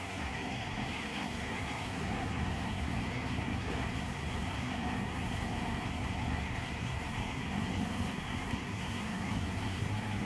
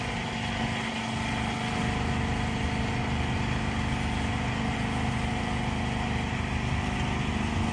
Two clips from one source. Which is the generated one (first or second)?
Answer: first